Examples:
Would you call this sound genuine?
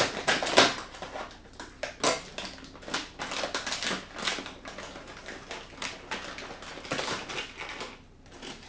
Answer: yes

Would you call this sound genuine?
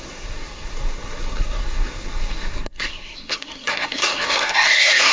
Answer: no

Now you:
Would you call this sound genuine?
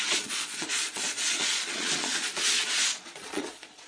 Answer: no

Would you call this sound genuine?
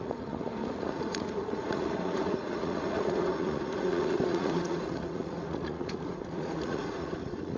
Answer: no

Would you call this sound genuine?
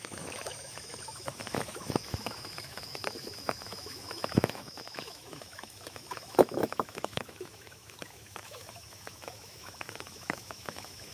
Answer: no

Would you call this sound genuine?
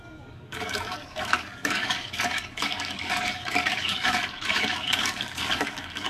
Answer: no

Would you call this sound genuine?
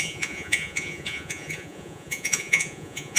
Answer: no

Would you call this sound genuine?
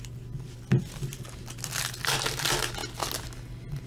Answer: yes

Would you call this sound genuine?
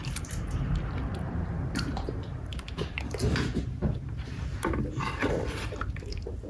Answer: no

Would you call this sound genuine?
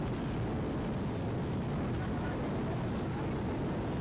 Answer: yes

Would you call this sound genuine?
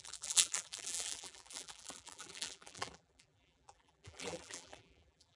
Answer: no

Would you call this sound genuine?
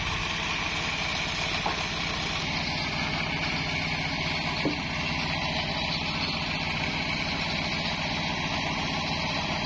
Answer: yes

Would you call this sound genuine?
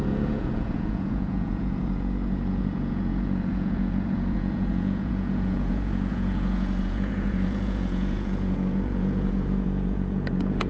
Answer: no